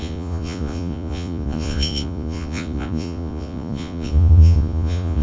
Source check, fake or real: fake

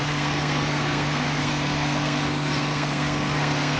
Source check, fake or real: fake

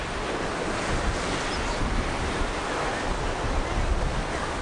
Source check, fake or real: real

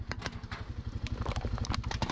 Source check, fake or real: real